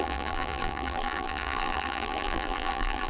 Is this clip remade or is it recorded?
remade